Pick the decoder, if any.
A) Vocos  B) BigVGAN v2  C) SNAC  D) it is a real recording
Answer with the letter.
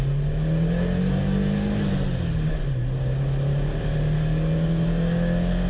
D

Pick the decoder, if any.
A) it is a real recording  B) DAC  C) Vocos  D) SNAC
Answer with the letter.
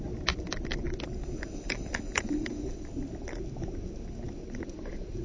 A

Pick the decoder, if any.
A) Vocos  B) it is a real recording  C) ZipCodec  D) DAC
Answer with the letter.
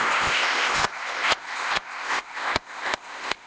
C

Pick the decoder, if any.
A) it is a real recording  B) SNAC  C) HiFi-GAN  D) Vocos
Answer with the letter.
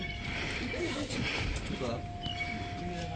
A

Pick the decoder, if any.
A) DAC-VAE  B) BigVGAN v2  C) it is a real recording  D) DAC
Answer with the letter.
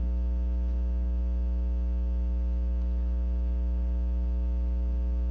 C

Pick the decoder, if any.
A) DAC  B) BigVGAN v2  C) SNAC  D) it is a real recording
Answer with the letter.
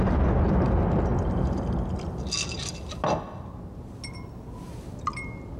D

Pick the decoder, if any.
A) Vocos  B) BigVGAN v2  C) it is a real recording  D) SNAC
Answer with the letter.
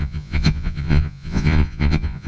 A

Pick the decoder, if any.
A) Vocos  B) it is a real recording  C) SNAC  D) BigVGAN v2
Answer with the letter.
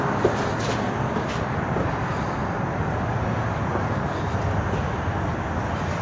B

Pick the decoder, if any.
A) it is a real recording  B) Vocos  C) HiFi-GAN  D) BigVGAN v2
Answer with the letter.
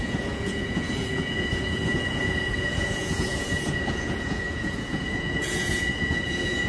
B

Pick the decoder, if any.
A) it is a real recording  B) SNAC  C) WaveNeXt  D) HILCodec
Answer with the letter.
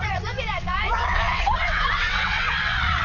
C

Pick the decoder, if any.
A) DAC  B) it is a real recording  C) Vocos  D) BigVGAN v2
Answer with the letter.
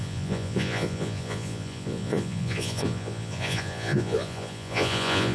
C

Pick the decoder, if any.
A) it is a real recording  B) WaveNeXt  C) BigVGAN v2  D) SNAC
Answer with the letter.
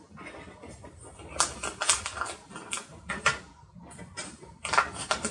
A